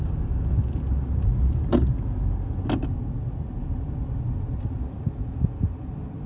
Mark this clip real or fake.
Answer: real